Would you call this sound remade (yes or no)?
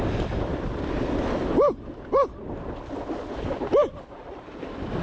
yes